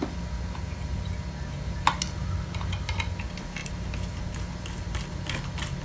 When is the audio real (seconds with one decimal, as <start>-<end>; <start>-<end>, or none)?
0.0-5.8